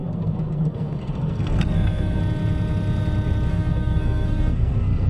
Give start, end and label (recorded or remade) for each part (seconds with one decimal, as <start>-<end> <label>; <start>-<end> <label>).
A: 0.0-2.2 remade; 2.2-3.5 recorded; 3.5-5.1 remade